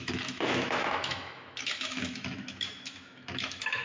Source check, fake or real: fake